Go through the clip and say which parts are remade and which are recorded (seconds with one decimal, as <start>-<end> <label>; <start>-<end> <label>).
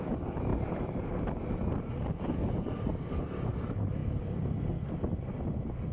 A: 0.0-0.5 recorded; 0.5-1.1 remade; 1.1-4.0 recorded; 4.0-4.7 remade; 4.7-5.9 recorded